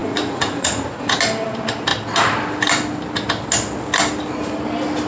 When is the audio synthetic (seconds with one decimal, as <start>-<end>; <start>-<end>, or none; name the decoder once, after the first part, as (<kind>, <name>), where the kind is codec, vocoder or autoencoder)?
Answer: 0.0-1.2 (vocoder, Vocos)